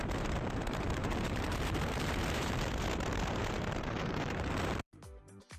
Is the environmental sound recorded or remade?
remade